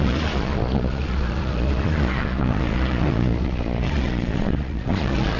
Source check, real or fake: fake